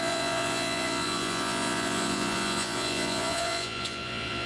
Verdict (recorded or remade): remade